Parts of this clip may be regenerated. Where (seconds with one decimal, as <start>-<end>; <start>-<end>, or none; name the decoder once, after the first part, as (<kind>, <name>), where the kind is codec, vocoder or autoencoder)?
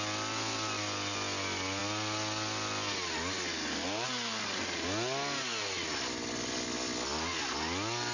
none